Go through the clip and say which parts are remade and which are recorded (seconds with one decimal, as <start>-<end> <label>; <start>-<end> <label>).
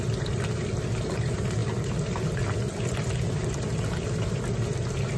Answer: 0.0-5.2 recorded